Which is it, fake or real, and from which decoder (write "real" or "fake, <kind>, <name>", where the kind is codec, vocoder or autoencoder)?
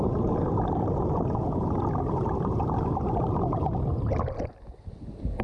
real